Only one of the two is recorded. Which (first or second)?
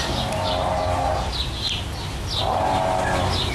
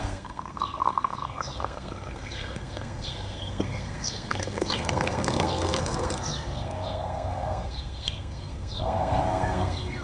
first